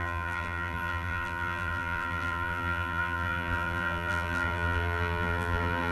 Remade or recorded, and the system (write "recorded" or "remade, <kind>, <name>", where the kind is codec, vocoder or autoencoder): remade, vocoder, BigVGAN v2